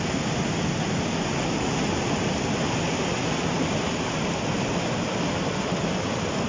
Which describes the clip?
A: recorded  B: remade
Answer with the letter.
A